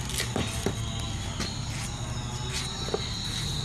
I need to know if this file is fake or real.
real